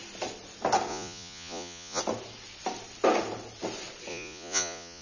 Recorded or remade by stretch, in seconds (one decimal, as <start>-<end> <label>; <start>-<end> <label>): 0.0-0.9 recorded; 0.9-2.0 remade; 2.0-4.1 recorded; 4.1-5.0 remade